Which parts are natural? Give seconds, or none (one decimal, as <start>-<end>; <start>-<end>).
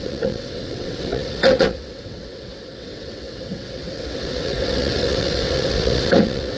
none